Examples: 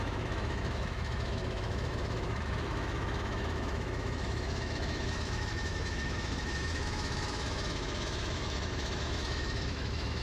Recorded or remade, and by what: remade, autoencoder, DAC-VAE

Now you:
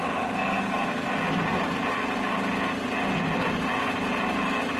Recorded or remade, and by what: recorded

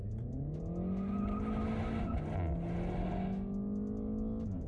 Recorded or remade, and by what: recorded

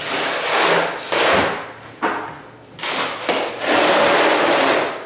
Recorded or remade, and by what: recorded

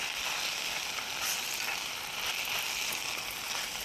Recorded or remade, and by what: recorded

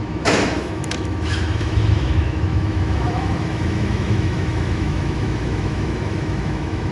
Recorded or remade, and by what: remade, autoencoder, DAC-VAE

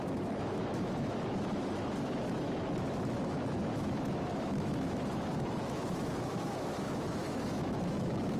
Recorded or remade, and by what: remade, autoencoder, DAC-VAE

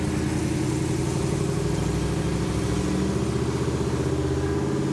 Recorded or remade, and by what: recorded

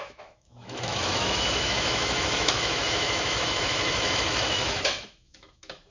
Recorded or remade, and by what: remade, autoencoder, DAC-VAE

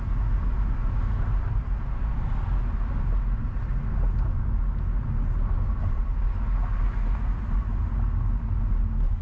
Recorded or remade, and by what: recorded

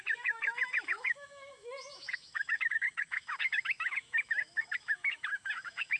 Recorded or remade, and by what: remade, autoencoder, DAC-VAE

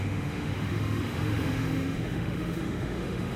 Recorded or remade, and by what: remade, autoencoder, DAC-VAE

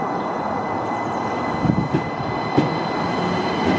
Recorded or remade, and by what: recorded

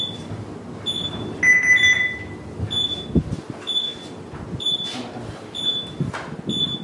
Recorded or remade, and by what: recorded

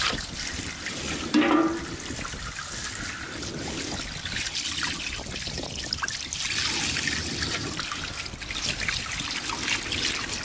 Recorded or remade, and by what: recorded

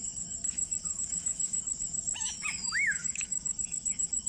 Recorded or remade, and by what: remade, autoencoder, DAC-VAE